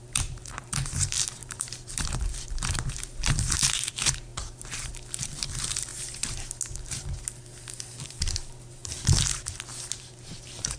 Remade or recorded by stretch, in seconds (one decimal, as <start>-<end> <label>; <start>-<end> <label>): 0.0-5.9 remade; 5.9-8.0 recorded; 8.0-8.8 remade; 8.8-9.9 recorded; 9.9-10.8 remade

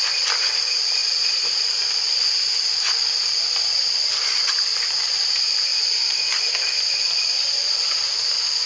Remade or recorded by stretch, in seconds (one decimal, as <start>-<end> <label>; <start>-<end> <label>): 0.0-5.7 recorded; 5.7-6.5 remade; 6.5-8.7 recorded